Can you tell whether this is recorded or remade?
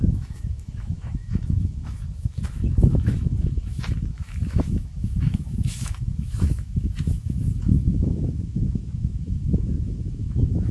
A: remade